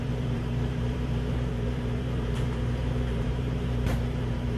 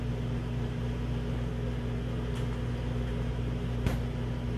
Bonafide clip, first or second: second